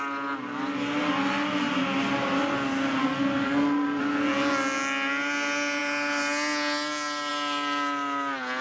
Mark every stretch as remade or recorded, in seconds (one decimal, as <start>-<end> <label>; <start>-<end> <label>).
0.0-3.0 recorded; 3.0-4.0 remade; 4.0-8.6 recorded